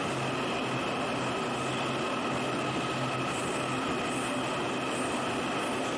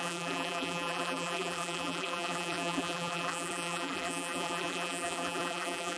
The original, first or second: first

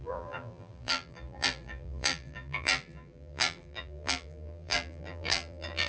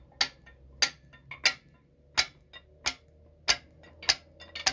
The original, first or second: second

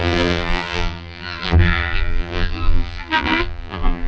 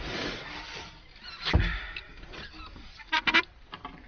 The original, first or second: second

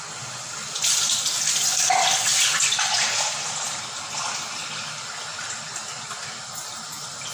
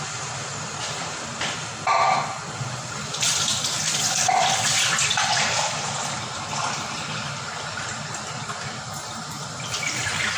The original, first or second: first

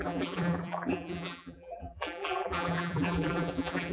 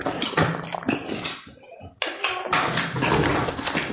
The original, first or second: second